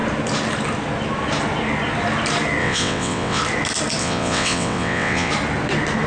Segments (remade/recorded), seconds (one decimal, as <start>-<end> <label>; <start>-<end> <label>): 0.0-2.6 recorded; 2.6-3.4 remade; 3.4-4.0 recorded; 4.0-5.3 remade; 5.3-6.1 recorded